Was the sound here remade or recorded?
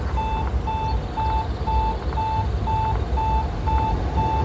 recorded